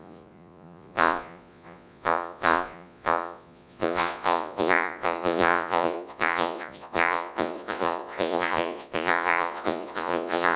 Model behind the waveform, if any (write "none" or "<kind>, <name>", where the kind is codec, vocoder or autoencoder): vocoder, Vocos